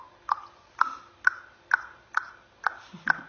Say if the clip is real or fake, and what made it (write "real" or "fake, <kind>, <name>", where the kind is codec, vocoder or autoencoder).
real